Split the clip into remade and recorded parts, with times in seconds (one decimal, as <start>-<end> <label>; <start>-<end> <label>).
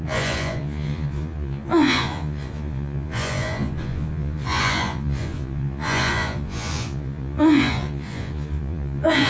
0.0-9.3 remade